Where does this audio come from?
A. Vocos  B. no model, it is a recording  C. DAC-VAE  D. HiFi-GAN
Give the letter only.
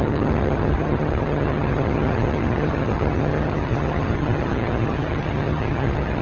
D